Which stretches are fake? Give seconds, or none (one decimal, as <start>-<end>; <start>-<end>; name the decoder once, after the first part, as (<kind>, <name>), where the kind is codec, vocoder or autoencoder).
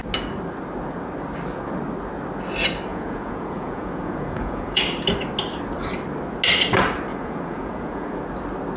2.9-4.8 (vocoder, Vocos); 7.1-8.2